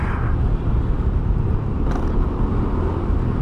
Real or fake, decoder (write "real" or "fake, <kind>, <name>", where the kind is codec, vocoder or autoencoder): real